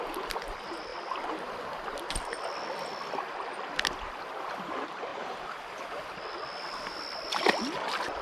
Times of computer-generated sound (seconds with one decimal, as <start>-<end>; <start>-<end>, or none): none